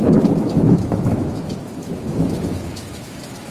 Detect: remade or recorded remade